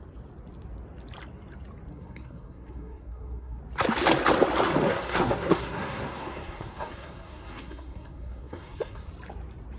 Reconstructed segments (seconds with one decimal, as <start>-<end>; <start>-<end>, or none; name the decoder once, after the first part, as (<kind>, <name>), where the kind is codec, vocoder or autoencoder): 1.9-3.6 (codec, SNAC); 4.9-9.1